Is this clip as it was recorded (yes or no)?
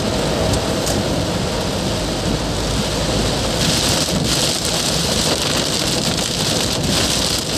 yes